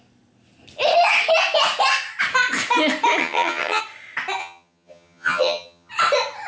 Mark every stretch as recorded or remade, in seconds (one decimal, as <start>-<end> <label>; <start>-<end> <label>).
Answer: 0.0-3.2 recorded; 3.2-3.8 remade; 3.8-4.4 recorded; 4.4-5.9 remade; 5.9-6.5 recorded